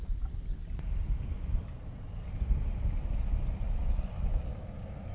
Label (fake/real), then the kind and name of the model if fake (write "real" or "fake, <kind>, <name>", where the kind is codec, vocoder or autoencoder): real